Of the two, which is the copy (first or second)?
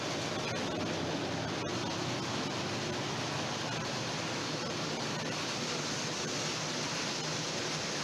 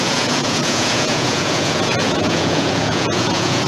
second